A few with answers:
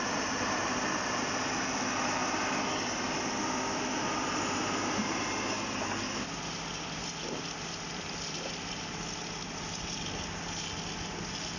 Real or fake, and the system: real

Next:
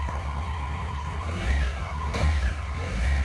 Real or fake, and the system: fake, codec, SNAC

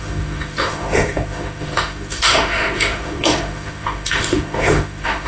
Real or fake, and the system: fake, autoencoder, DAC-VAE